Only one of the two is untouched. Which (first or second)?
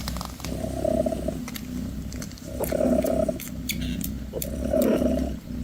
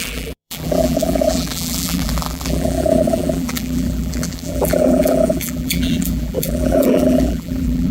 first